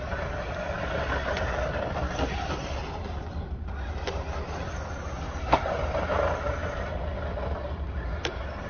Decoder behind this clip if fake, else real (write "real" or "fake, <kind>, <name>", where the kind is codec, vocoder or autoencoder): real